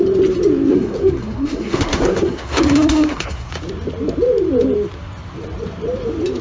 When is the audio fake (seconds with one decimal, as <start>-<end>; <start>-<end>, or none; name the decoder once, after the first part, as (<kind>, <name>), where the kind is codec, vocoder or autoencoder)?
0.7-3.5 (codec, SNAC)